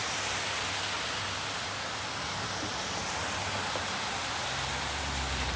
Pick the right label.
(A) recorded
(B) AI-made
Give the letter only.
A